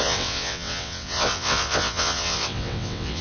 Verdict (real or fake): fake